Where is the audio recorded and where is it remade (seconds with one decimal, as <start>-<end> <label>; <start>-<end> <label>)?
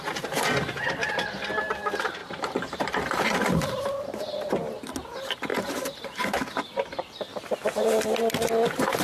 0.0-2.2 recorded; 2.2-4.5 remade; 4.5-5.5 recorded; 5.5-6.4 remade; 6.4-9.0 recorded